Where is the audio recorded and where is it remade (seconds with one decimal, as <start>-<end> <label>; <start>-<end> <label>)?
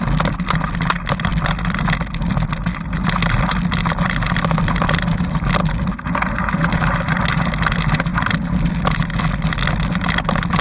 0.0-10.6 recorded